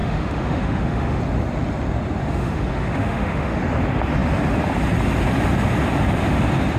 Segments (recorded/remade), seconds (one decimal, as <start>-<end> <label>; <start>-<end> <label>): 0.0-1.2 remade; 1.2-2.2 recorded; 2.2-3.6 remade; 3.6-6.8 recorded